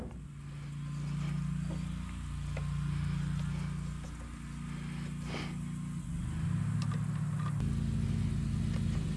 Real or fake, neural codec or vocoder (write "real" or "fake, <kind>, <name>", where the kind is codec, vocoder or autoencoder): real